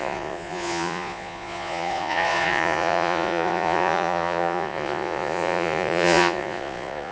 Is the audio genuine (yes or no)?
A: no